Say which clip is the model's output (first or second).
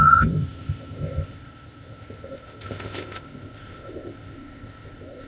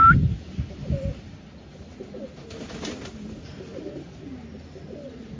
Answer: first